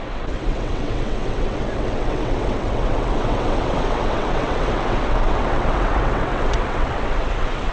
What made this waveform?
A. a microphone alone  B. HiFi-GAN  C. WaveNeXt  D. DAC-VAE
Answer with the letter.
C